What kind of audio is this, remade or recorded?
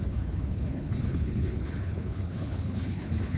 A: remade